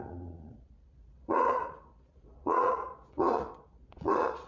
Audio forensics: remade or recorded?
remade